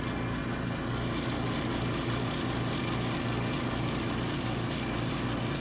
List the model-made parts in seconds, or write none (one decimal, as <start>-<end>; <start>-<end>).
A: none